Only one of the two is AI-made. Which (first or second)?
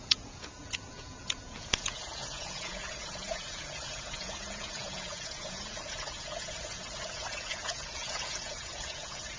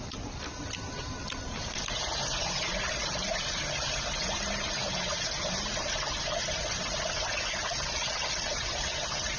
first